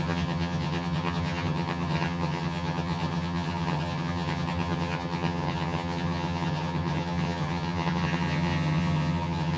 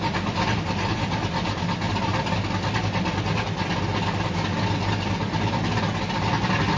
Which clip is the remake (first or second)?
first